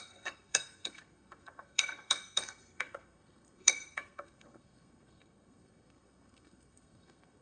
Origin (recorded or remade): remade